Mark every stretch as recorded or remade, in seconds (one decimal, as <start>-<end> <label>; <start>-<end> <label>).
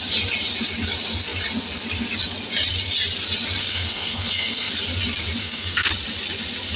0.0-3.6 recorded; 3.6-4.7 remade; 4.7-5.4 recorded; 5.4-5.9 remade; 5.9-6.8 recorded